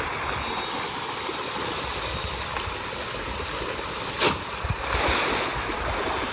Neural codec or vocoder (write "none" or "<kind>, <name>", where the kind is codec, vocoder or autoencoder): none